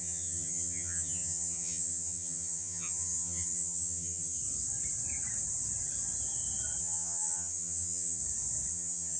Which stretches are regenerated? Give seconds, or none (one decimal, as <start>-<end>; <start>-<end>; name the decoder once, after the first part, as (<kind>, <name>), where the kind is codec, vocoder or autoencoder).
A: 0.0-4.4 (vocoder, HiFi-GAN); 6.8-8.2; 8.7-9.2